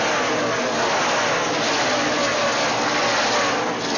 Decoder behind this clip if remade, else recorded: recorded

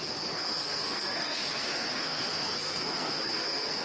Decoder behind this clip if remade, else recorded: remade, codec, SNAC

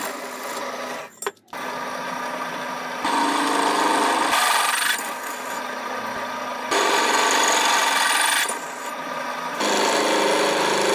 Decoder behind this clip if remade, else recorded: recorded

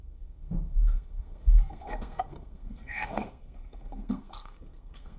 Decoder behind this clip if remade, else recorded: remade, codec, SNAC